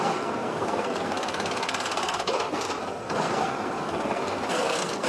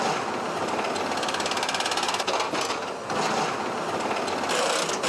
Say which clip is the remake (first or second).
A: first